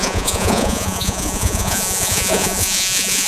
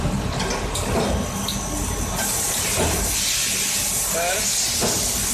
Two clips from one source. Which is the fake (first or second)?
first